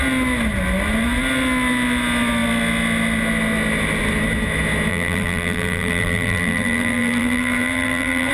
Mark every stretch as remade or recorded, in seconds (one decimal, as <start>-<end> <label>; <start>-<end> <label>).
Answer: 0.0-4.9 recorded; 4.9-8.3 remade